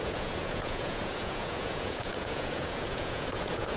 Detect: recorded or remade remade